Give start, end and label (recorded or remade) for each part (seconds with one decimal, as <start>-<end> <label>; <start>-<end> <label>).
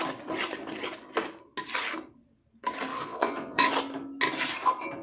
0.0-2.9 recorded; 2.9-3.7 remade; 3.7-5.0 recorded